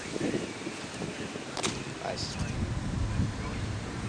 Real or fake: real